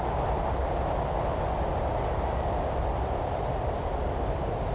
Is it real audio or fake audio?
real